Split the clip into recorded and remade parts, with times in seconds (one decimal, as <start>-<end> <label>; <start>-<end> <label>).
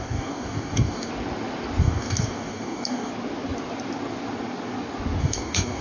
0.0-1.1 remade; 1.1-1.8 recorded; 1.8-3.1 remade; 3.1-5.2 recorded; 5.2-5.8 remade